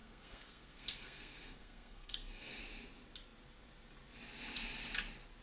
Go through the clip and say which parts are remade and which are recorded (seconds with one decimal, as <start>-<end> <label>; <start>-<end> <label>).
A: 0.0-2.6 remade; 2.6-5.4 recorded

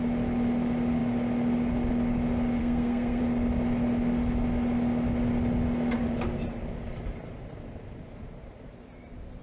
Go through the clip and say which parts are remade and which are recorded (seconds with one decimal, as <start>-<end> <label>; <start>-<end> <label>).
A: 0.0-2.6 recorded; 2.6-3.2 remade; 3.2-9.4 recorded